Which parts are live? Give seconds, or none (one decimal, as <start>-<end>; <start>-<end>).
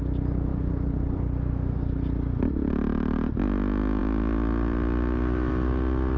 0.0-6.2